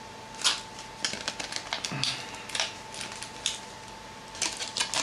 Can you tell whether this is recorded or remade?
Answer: recorded